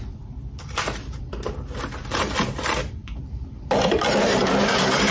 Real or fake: fake